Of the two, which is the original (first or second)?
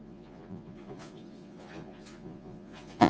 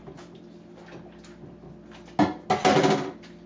second